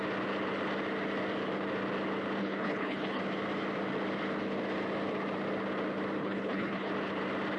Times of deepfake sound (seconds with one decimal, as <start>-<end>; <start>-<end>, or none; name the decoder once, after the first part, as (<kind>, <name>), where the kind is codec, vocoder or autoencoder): 2.4-3.2 (codec, HILCodec); 6.2-6.9

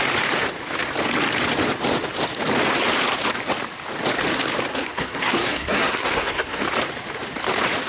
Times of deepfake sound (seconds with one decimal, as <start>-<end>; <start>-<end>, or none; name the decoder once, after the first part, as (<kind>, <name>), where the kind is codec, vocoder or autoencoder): 4.7-6.6 (codec, SNAC)

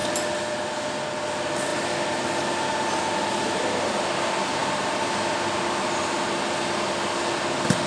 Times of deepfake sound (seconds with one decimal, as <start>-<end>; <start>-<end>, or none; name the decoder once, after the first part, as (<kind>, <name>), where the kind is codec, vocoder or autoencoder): none